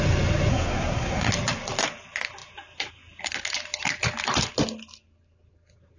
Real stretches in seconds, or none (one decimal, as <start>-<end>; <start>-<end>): 0.0-0.5; 1.3-6.0